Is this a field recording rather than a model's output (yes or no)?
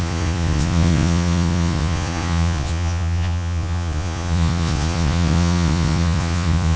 no